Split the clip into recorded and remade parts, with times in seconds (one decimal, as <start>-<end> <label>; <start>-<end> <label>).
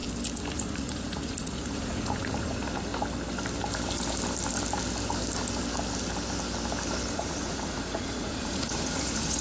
0.0-0.5 recorded; 0.5-2.9 remade; 2.9-7.1 recorded; 7.1-9.4 remade